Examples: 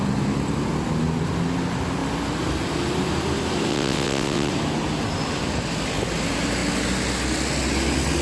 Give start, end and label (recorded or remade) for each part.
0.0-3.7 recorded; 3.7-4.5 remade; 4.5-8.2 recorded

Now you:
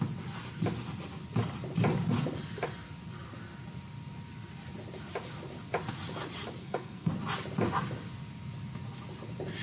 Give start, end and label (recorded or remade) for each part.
0.0-6.6 recorded; 6.6-7.1 remade; 7.1-9.6 recorded

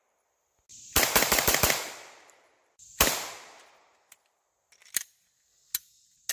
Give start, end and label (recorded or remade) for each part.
0.0-0.7 recorded; 0.7-3.3 remade; 3.3-4.8 recorded; 4.8-5.4 remade; 5.4-6.3 recorded

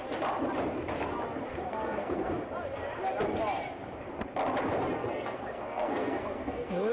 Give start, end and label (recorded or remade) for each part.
0.0-1.5 recorded; 1.5-2.3 remade; 2.3-5.0 recorded; 5.0-6.9 remade

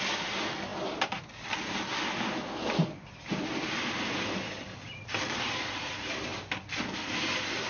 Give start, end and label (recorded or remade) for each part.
0.0-7.7 recorded

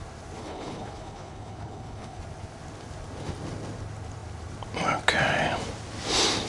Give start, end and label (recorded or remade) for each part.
0.0-0.4 recorded; 0.4-2.2 remade; 2.2-6.5 recorded